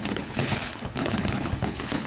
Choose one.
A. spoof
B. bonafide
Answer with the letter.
A